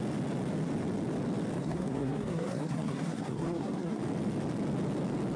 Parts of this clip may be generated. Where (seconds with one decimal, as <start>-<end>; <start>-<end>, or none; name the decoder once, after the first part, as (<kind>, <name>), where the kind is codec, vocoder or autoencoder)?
1.6-4.0 (codec, SNAC)

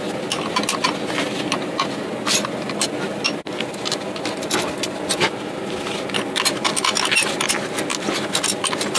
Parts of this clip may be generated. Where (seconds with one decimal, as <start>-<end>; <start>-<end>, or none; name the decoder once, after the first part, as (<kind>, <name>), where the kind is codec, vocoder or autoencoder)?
none